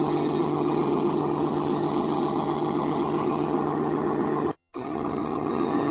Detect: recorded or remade remade